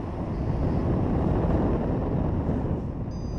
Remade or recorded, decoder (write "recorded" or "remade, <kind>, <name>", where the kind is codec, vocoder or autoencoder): recorded